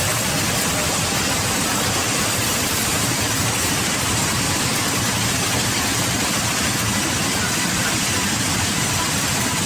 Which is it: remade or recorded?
recorded